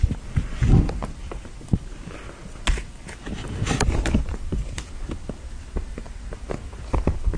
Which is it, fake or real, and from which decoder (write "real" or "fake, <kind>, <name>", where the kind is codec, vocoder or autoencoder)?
real